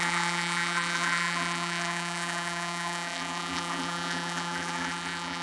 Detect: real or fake fake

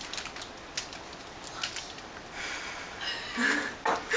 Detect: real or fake real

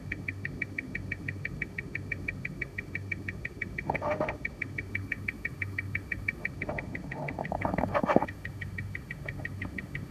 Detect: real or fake fake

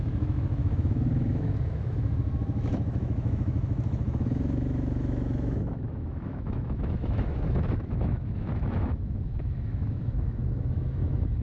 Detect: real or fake fake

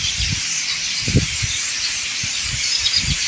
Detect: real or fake fake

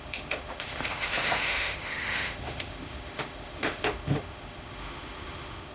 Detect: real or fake fake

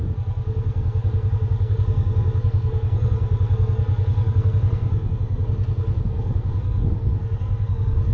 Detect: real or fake fake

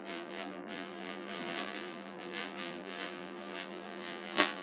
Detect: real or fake fake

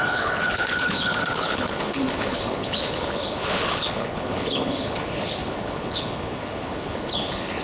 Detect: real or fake fake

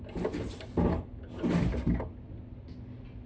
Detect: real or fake real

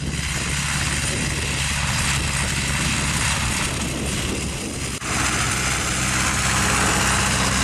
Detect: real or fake real